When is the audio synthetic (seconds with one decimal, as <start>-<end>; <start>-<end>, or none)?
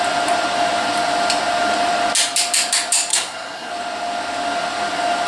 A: 3.1-3.7